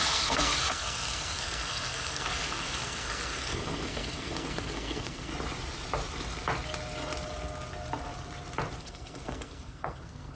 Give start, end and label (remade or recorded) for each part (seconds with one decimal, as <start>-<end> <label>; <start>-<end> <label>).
0.0-5.3 remade; 5.3-8.8 recorded; 8.8-10.4 remade